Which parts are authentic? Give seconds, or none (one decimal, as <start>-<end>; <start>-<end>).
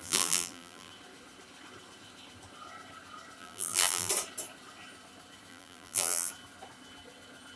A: 0.9-3.4; 4.1-5.5; 6.3-7.6